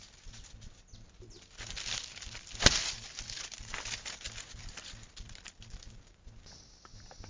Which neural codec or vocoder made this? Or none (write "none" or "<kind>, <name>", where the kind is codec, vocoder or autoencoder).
none